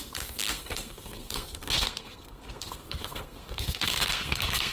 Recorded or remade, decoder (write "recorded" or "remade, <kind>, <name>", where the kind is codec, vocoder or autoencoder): remade, codec, SNAC